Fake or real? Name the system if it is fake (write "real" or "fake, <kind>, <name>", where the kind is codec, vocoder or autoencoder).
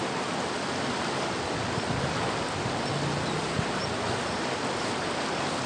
real